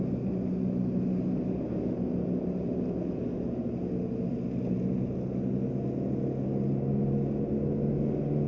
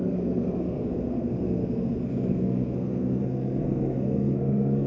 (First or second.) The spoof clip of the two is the second